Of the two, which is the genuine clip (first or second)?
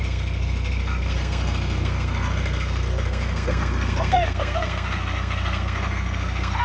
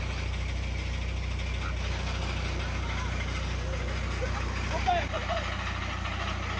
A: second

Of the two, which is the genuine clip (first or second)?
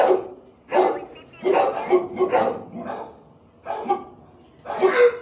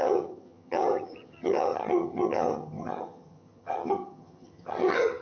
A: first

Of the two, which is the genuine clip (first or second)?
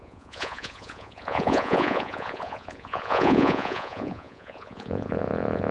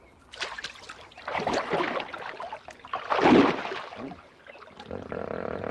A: second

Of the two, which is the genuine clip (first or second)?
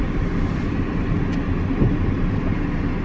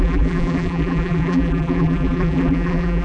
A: first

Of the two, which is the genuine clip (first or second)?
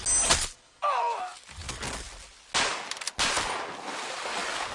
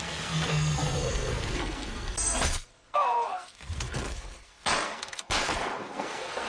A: first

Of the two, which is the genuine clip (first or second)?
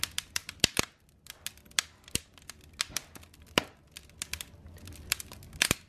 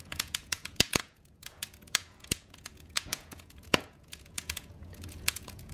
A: first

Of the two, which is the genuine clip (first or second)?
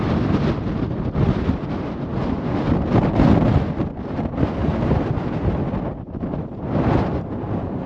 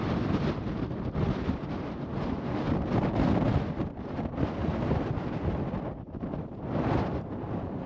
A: first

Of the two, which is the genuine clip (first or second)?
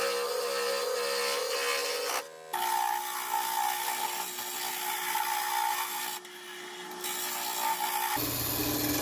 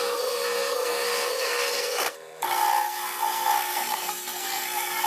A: first